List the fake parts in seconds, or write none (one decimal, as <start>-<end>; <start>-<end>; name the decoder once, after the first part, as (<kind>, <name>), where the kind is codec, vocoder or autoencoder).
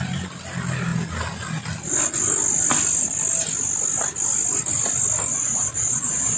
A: 5.3-6.4 (vocoder, Vocos)